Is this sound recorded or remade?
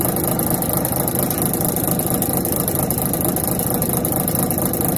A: recorded